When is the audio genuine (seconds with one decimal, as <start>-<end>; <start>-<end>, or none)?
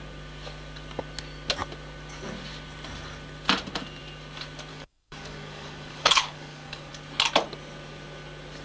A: 0.0-4.7; 6.9-8.6